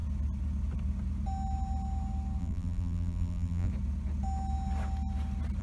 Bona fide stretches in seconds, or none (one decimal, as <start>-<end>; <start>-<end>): 0.0-2.4; 3.7-5.6